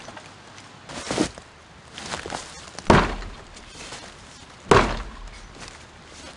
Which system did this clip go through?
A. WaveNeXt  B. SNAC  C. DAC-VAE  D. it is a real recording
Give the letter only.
D